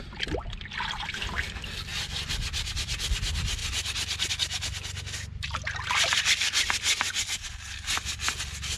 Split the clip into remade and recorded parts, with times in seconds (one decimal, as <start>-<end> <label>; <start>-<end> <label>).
0.0-8.8 recorded